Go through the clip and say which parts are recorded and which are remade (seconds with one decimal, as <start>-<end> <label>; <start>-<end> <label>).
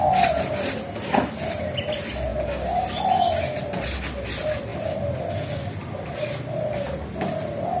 0.0-7.8 recorded